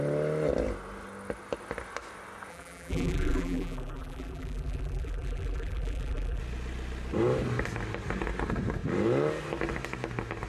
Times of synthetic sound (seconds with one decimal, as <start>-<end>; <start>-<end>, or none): 2.5-6.4